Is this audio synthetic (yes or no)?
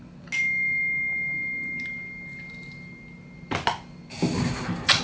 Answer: no